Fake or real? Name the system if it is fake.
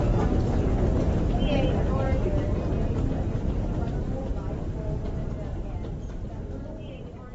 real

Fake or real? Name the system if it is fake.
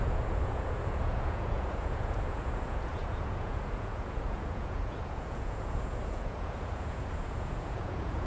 fake, vocoder, Vocos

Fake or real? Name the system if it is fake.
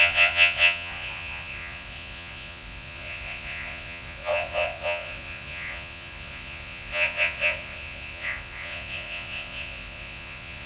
fake, vocoder, Vocos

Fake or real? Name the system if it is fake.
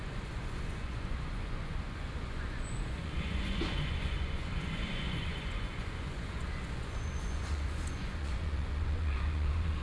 fake, vocoder, Vocos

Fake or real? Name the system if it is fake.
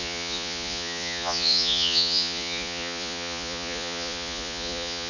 fake, vocoder, Vocos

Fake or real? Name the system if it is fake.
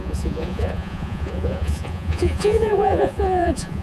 fake, vocoder, Vocos